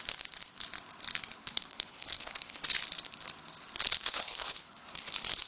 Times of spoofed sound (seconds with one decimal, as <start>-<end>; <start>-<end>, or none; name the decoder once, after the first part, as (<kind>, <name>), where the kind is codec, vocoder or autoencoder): 1.4-2.6 (codec, HILCodec); 3.9-5.1